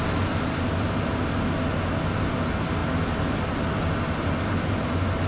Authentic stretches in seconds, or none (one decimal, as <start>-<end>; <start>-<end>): 0.0-5.3